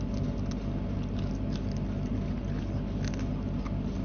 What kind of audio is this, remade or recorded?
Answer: recorded